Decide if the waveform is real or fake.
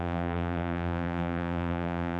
fake